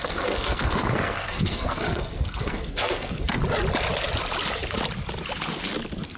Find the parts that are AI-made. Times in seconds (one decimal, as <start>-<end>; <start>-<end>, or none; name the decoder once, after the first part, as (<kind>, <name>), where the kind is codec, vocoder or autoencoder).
0.0-3.4 (codec, SNAC)